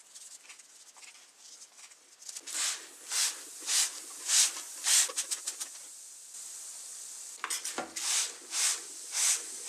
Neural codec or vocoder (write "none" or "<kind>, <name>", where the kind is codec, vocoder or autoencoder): none